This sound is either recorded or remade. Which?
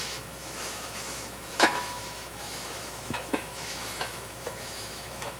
remade